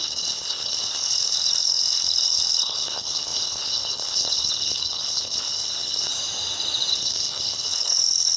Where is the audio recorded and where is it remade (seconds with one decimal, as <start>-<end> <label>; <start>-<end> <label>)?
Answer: 0.0-6.1 remade; 6.1-6.9 recorded; 6.9-8.4 remade